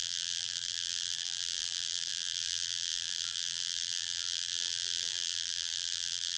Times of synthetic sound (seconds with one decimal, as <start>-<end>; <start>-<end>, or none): 0.0-6.4